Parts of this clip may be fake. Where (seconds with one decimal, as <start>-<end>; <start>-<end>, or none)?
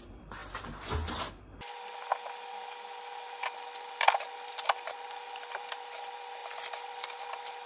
none